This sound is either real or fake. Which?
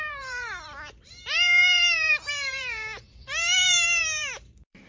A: fake